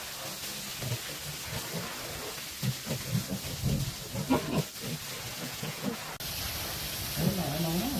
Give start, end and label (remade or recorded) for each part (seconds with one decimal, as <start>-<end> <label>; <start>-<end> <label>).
0.0-5.3 recorded; 5.3-6.0 remade; 6.0-8.0 recorded